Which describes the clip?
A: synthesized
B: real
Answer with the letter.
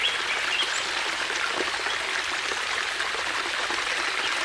B